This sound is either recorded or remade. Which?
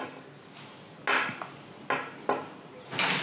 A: recorded